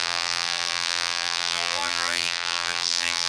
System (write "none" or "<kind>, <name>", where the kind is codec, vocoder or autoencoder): vocoder, BigVGAN v2